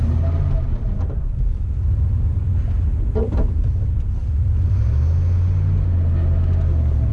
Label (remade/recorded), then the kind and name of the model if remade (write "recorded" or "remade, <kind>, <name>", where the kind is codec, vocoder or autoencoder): recorded